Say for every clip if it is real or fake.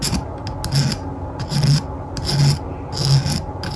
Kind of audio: real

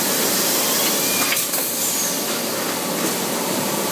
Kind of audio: real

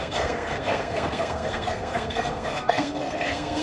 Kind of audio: fake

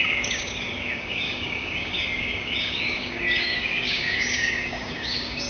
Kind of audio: fake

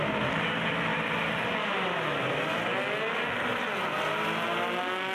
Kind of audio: real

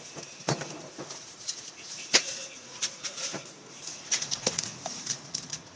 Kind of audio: fake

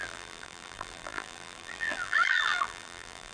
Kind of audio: fake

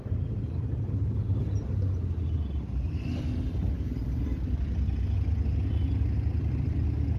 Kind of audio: real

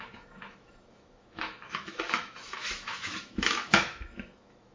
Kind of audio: fake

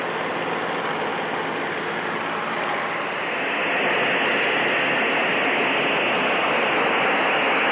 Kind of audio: real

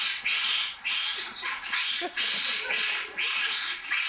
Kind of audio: fake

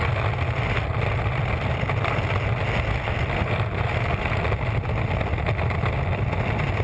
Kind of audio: real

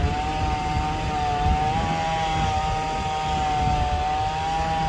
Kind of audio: real